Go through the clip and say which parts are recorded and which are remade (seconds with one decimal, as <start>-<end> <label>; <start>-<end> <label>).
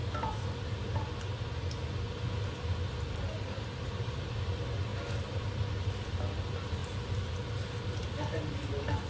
0.0-3.9 recorded; 3.9-6.8 remade; 6.8-8.5 recorded; 8.5-9.1 remade